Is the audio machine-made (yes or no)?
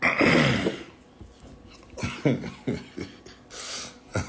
no